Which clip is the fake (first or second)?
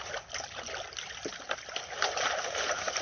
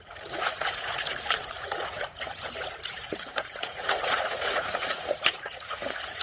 second